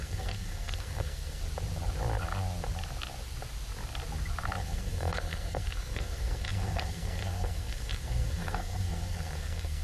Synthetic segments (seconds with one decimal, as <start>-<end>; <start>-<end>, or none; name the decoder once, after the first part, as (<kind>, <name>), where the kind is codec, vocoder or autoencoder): 0.0-1.4 (codec, SNAC); 4.6-9.8